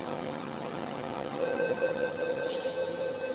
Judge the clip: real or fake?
fake